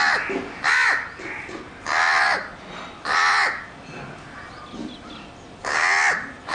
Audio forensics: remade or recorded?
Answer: recorded